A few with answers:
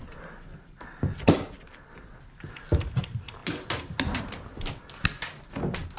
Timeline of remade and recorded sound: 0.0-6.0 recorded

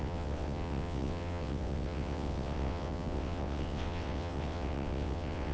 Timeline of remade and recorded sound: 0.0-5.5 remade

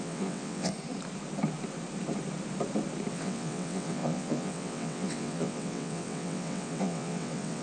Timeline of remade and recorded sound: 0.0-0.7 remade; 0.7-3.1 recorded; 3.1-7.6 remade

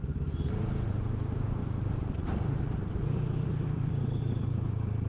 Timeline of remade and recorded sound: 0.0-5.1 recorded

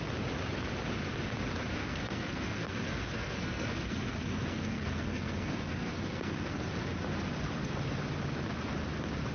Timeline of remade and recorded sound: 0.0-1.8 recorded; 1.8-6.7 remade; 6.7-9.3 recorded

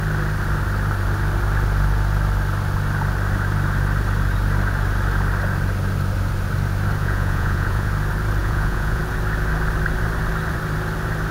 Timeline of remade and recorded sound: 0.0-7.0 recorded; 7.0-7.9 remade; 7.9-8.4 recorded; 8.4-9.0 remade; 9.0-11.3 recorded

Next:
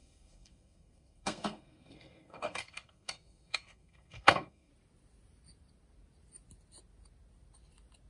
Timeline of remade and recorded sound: 0.0-4.7 remade; 4.7-8.1 recorded